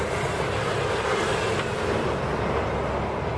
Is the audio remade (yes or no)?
no